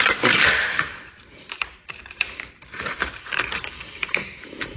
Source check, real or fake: fake